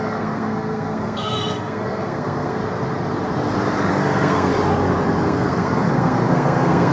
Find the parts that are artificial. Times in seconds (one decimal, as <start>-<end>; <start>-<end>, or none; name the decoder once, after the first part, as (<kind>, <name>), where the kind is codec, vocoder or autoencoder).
0.0-2.6 (codec, SNAC); 3.9-4.5; 5.2-6.9